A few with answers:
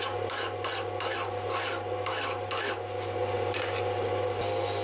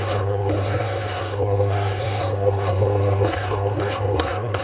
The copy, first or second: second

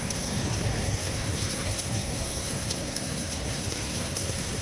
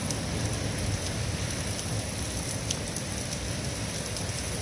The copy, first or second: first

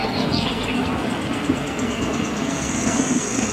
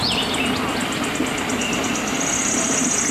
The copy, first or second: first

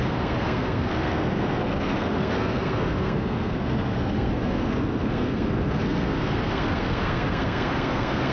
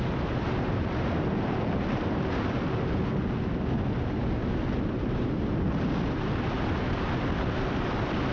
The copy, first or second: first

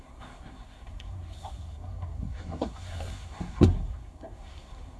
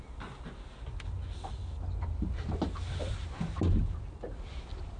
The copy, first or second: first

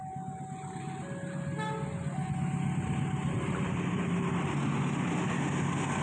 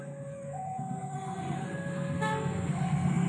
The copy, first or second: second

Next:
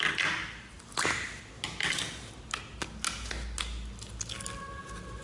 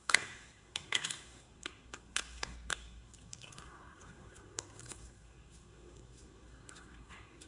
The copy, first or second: second